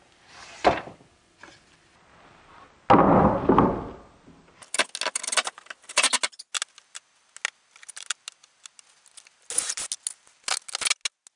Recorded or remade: recorded